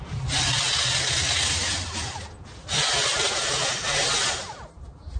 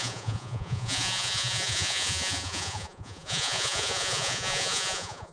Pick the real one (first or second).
first